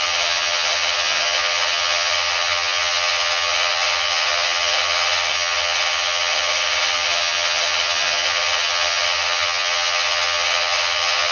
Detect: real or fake fake